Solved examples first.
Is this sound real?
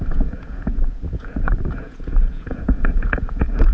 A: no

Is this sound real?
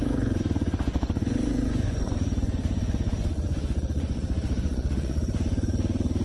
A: no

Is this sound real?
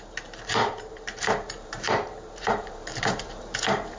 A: no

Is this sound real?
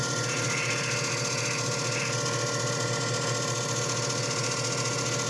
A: yes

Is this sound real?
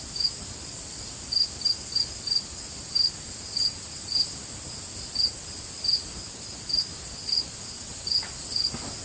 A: yes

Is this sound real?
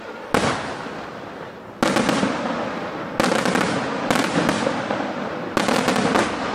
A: yes